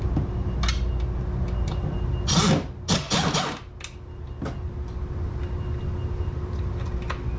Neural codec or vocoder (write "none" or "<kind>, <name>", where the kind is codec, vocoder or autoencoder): none